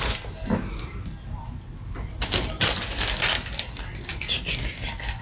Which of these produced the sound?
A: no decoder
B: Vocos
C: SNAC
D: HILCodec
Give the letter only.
A